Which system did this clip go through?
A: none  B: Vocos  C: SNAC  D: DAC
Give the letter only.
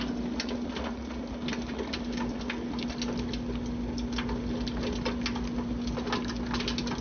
A